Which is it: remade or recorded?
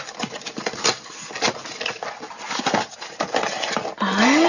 recorded